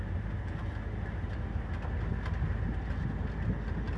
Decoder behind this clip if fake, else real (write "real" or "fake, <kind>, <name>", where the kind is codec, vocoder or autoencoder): real